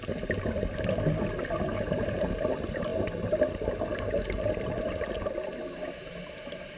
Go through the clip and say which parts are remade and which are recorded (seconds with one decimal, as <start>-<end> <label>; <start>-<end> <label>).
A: 0.0-6.8 recorded